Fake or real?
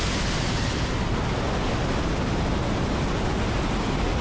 real